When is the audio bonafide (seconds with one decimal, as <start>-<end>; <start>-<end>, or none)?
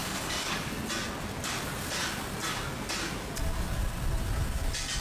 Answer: 0.7-5.0